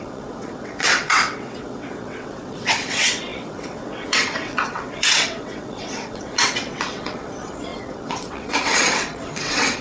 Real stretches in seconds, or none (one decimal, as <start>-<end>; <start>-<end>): none